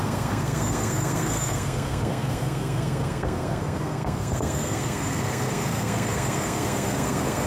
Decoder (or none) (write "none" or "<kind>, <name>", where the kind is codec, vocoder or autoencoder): codec, SNAC